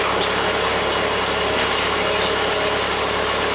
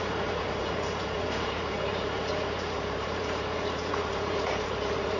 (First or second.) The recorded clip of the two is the first